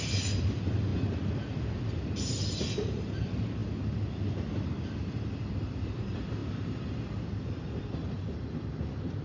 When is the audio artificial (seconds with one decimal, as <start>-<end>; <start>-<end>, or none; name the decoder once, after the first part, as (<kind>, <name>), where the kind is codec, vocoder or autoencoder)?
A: 0.0-3.6 (vocoder, BigVGAN v2); 4.3-9.2